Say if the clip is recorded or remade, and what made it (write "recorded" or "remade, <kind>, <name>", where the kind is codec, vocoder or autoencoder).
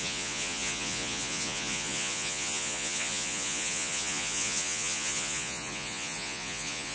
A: remade, vocoder, Vocos